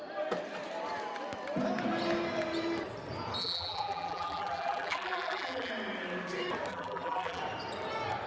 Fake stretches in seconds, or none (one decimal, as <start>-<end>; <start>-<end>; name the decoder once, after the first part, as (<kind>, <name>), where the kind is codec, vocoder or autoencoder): 3.4-5.7 (vocoder, BigVGAN v2); 6.7-7.4